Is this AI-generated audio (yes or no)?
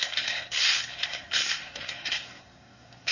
yes